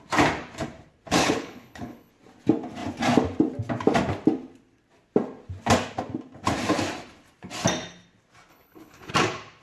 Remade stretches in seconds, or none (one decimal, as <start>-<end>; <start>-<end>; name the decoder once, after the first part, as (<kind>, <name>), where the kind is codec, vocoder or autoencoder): 1.2-2.1 (codec, HILCodec); 8.5-9.1